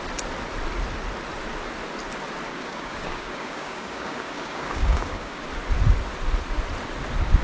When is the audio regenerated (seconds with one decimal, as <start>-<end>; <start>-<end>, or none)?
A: 2.5-5.5